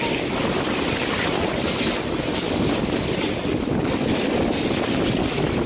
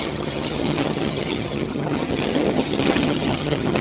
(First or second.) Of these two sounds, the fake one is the second